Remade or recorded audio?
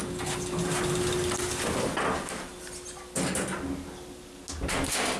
recorded